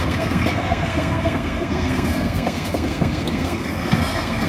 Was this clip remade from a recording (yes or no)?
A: yes